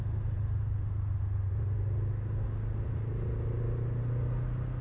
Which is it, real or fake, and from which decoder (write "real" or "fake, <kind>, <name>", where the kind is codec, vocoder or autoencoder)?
real